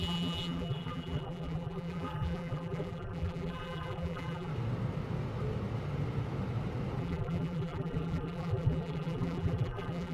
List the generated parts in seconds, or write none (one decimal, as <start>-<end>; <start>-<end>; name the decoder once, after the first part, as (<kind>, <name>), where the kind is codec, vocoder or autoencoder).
0.0-4.5 (vocoder, BigVGAN v2); 7.0-10.1